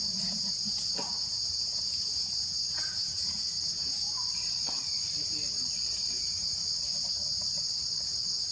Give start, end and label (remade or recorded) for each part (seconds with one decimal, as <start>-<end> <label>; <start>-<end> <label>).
0.0-4.2 remade; 4.2-6.1 recorded; 6.1-6.6 remade; 6.6-8.5 recorded